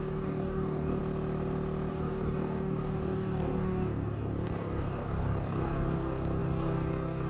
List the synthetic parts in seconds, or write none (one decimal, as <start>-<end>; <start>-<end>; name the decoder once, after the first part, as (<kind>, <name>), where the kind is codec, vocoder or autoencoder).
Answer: 0.0-1.0 (codec, DAC); 1.9-7.3